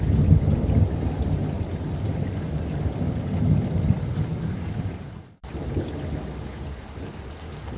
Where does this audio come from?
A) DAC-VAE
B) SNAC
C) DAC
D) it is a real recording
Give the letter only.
D